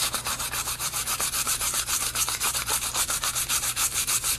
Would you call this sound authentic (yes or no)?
no